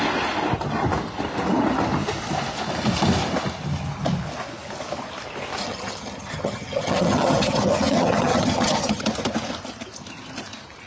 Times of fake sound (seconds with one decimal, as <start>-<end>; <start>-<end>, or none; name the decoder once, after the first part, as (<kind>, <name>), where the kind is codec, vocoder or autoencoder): 5.6-9.0 (vocoder, HiFi-GAN)